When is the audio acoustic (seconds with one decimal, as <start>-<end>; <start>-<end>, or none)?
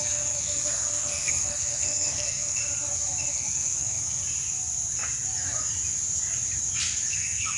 2.6-3.3; 4.2-7.1